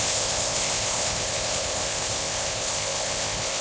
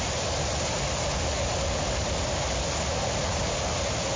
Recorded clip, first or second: second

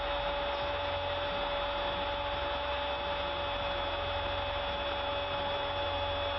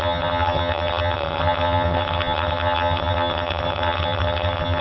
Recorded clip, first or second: first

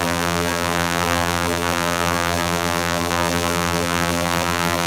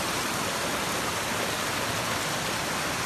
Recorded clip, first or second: second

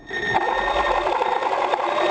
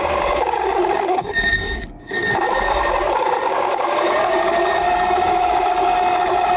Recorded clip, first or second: first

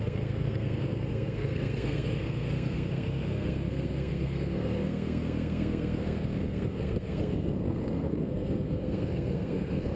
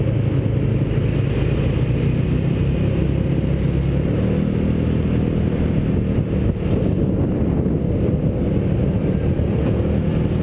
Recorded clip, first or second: second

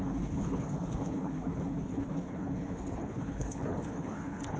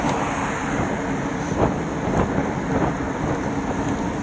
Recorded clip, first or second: second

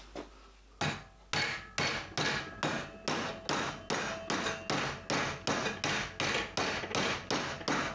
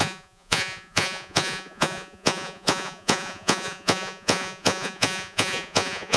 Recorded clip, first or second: first